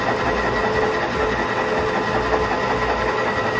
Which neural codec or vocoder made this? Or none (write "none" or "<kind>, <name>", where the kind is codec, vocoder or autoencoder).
none